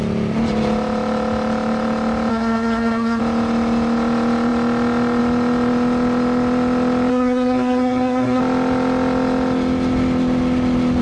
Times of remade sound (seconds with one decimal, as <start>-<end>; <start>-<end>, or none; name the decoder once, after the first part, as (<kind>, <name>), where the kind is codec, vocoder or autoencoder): 2.3-3.2 (codec, SNAC); 7.1-8.4